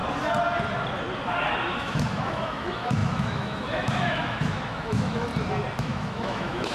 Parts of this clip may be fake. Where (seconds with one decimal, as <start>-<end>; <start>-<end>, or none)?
1.7-5.3; 5.8-6.7